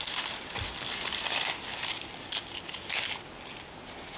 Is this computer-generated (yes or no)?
no